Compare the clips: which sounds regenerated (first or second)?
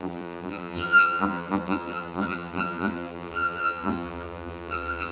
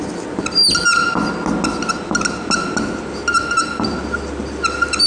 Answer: first